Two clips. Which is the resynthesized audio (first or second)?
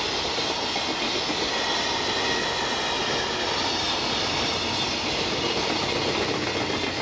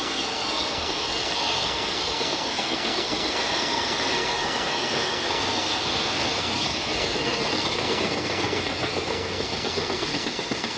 second